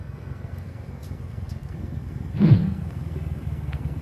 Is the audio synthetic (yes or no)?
yes